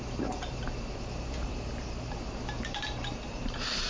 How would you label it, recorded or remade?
remade